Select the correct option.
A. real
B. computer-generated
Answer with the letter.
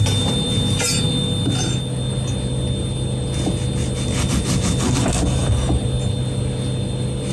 A